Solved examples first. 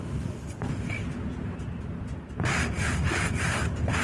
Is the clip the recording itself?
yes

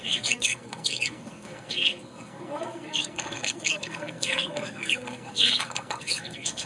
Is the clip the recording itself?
no